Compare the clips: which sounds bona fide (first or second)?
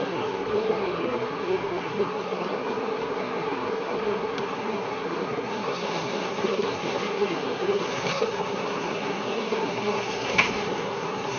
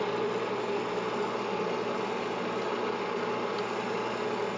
second